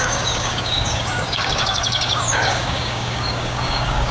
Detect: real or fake fake